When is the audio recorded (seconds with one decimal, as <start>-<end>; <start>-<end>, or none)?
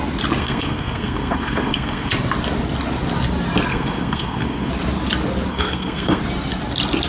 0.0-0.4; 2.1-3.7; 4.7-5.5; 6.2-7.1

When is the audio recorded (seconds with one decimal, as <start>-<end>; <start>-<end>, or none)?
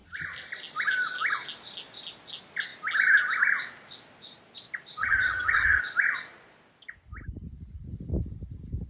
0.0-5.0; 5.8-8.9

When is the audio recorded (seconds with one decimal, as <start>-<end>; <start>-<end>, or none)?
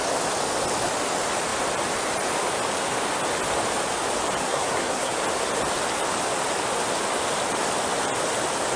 0.0-4.4; 5.1-8.8